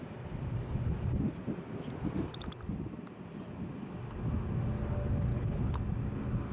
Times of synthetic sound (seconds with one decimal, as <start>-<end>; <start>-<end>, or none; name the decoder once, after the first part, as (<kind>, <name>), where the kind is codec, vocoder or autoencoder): 5.3-5.8 (codec, HILCodec)